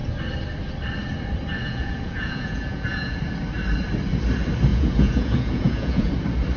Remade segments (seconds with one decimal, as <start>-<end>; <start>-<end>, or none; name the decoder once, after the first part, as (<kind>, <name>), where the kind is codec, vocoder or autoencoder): 1.6-3.2 (vocoder, Vocos); 4.7-6.1